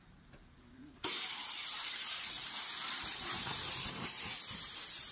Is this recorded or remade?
remade